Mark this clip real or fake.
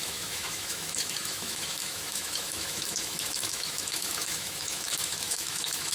fake